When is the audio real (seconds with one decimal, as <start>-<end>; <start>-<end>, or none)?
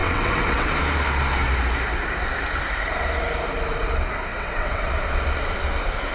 0.7-4.3; 4.9-6.1